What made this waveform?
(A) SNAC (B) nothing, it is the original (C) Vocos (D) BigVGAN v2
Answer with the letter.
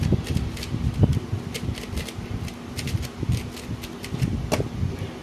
B